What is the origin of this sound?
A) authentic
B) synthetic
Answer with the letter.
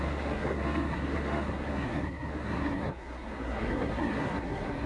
B